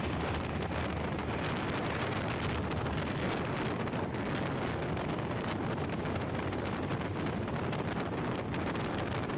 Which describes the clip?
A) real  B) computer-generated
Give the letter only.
A